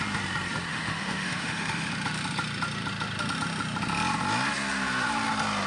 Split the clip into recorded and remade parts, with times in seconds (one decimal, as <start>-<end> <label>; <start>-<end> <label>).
0.0-0.7 recorded; 0.7-1.9 remade; 1.9-5.7 recorded